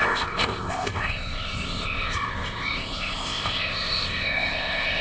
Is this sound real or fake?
fake